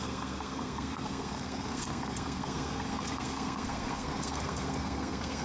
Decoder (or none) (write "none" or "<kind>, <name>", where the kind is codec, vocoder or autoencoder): codec, SNAC